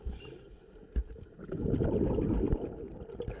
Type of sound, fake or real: real